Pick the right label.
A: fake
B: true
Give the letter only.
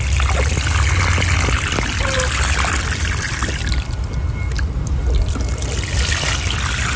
B